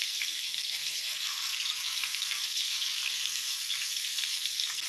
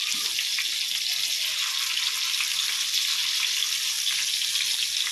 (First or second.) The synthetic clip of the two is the first